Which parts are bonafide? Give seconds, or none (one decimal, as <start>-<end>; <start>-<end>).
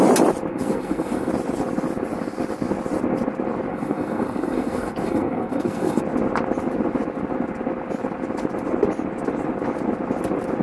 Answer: 0.0-0.5; 1.3-3.7; 6.0-10.6